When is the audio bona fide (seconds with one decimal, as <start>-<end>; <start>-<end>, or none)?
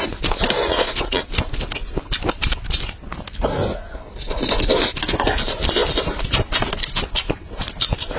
0.0-0.6; 1.2-8.2